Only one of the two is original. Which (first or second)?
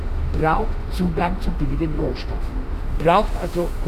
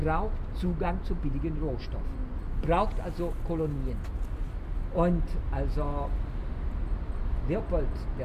second